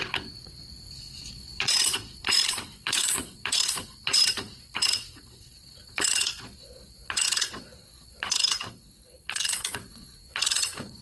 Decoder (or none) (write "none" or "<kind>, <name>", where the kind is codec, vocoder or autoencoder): vocoder, Vocos